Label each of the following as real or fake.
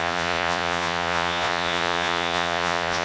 fake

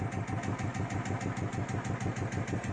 real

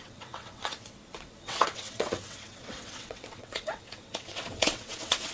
fake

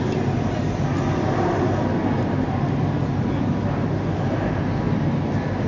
real